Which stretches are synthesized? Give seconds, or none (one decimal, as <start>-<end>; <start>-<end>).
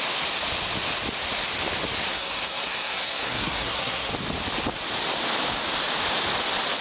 2.1-4.1